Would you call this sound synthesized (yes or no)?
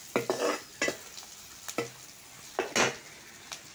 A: no